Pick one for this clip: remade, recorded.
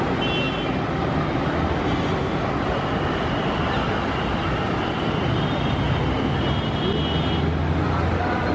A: recorded